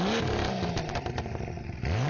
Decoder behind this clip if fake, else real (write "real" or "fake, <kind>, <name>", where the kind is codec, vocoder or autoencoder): real